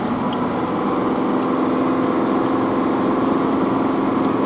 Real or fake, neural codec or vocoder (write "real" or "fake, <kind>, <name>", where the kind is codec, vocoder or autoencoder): real